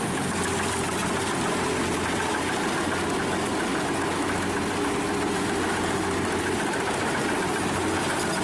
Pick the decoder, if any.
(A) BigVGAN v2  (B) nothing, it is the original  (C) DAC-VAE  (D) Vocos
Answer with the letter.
B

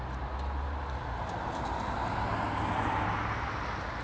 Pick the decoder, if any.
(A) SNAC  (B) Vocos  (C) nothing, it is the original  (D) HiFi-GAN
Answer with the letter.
C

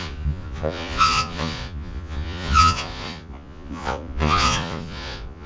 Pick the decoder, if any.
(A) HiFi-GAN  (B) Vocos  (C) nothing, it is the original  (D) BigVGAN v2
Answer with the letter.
B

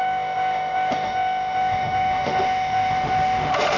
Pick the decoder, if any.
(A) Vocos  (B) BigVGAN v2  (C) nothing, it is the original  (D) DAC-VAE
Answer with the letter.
D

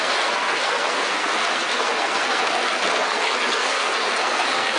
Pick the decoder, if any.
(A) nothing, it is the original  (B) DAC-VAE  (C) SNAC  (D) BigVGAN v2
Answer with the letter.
C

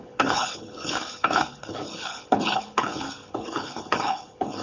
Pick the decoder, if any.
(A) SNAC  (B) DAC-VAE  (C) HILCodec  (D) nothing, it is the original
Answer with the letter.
C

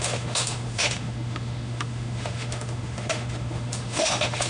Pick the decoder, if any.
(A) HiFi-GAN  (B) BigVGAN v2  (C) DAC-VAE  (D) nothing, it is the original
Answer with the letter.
C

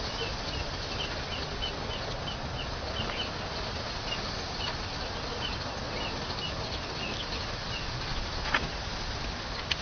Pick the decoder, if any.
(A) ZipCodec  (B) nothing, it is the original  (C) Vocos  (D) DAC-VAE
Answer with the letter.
B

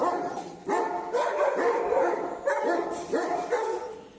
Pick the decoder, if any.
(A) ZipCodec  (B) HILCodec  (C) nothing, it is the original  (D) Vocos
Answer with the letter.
C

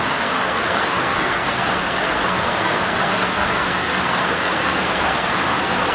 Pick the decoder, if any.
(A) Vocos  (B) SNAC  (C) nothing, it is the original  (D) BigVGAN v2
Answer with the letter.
B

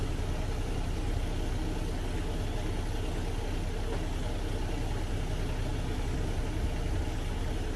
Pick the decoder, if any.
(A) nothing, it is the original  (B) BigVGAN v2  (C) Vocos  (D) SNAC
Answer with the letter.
A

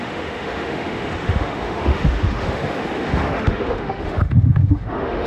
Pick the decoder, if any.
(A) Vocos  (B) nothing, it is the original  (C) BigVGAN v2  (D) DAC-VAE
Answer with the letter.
D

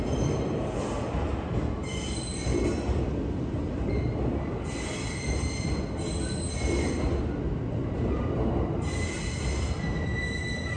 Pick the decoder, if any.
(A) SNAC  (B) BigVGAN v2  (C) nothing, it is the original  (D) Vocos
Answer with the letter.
C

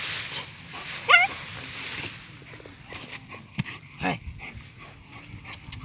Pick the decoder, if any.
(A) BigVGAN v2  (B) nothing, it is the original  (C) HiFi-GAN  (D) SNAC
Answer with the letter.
B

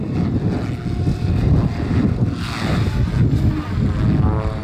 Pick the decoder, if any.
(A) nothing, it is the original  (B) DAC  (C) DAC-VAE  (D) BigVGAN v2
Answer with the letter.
A